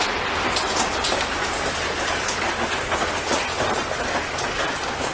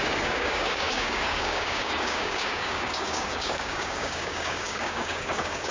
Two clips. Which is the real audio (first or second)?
first